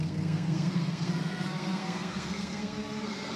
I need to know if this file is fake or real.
fake